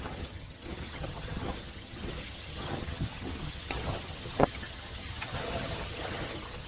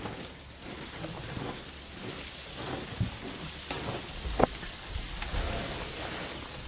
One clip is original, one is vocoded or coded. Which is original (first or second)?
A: second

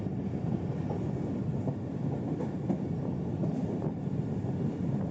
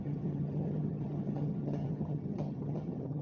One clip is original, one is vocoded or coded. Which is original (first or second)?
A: first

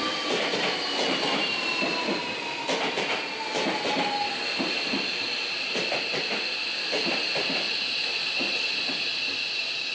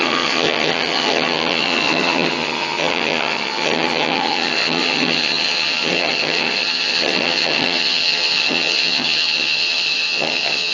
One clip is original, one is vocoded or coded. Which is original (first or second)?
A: first